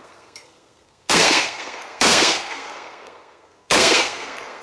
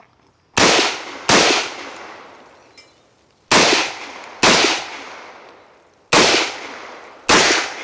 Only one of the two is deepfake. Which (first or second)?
first